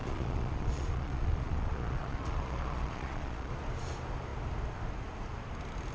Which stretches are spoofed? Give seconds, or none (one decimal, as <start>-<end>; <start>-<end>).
0.0-3.5